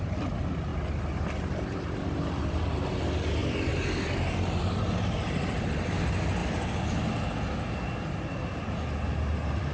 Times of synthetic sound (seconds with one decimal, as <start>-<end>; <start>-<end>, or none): 0.7-2.6; 3.4-4.3; 6.4-7.1